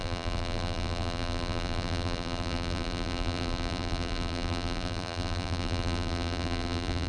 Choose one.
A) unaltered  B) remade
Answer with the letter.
B